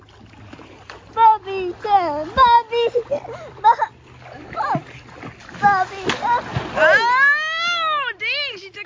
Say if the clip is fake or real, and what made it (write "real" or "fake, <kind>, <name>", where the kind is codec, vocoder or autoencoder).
real